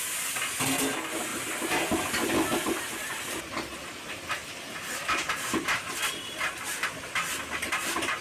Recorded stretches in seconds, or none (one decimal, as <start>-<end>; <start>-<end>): 0.0-8.2